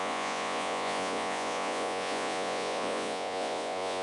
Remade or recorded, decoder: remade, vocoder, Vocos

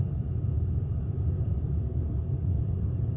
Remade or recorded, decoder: remade, vocoder, Vocos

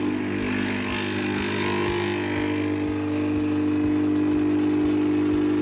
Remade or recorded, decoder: recorded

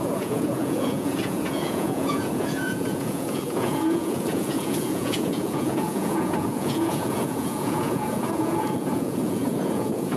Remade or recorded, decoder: remade, vocoder, Vocos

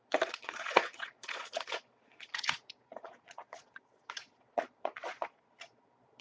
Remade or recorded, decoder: remade, vocoder, Vocos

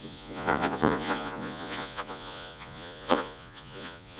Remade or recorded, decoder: remade, vocoder, Vocos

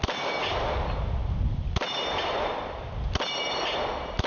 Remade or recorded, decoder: recorded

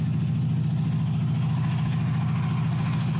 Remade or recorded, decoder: recorded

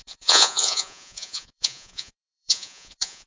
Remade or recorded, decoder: remade, vocoder, Vocos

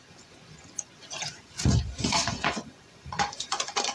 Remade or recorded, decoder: remade, vocoder, Vocos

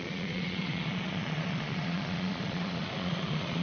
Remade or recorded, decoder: remade, vocoder, Vocos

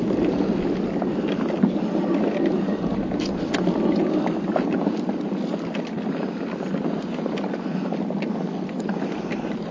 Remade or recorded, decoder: recorded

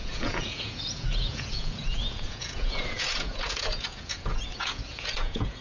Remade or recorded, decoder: remade, vocoder, Vocos